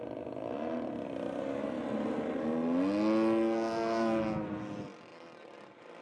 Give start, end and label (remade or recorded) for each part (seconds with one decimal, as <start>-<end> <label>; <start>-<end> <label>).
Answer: 0.0-6.0 recorded